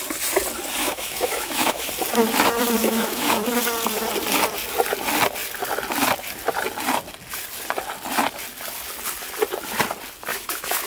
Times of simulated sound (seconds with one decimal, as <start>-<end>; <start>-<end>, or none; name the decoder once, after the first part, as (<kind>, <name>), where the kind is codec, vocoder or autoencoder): 0.8-1.9 (autoencoder, DAC-VAE); 2.8-3.5; 10.3-10.9